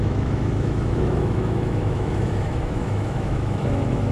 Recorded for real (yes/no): no